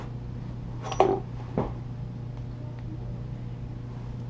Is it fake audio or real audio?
real